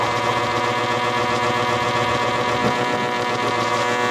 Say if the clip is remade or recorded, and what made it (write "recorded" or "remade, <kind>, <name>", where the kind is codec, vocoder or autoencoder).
recorded